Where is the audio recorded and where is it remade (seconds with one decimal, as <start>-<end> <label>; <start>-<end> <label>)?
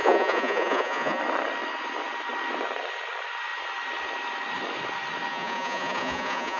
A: 0.0-1.2 remade; 1.2-5.3 recorded; 5.3-6.6 remade